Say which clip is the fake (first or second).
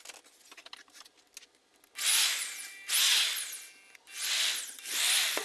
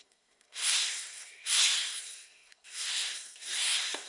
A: second